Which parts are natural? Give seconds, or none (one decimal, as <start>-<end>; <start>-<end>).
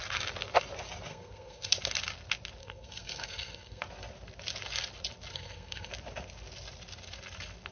0.0-1.1; 1.7-2.6; 3.8-5.3; 5.9-7.7